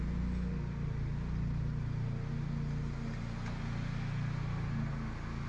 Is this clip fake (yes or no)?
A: no